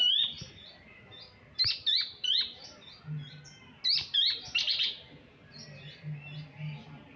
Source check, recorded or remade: recorded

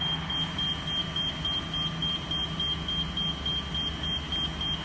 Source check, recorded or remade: recorded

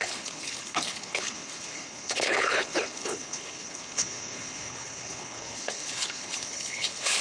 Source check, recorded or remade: remade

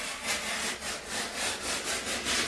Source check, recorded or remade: recorded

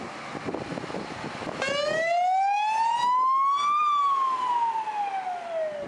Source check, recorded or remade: recorded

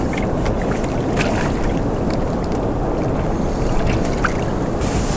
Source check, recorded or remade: recorded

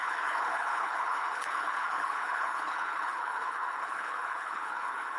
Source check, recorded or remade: remade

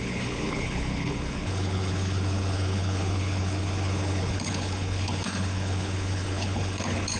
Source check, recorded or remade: remade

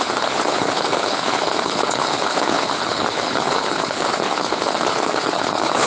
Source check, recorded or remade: remade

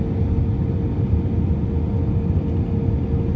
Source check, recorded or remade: recorded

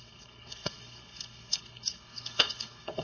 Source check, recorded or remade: remade